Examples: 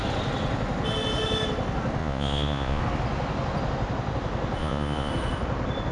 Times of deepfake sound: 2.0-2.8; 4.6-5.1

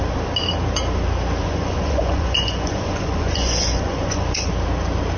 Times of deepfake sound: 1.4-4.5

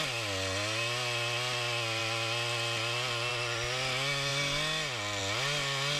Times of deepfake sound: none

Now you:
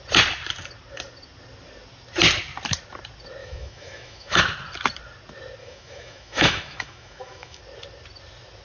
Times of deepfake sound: 3.4-4.4; 5.6-7.6

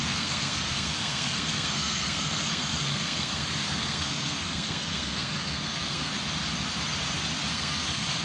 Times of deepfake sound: 0.0-6.1; 7.5-8.2

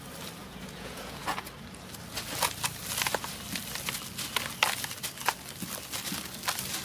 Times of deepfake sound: 0.4-1.5

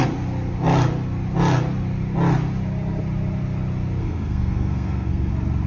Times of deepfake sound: 4.0-5.3

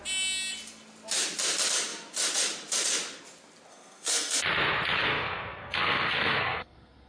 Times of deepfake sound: 3.7-4.4; 5.0-7.1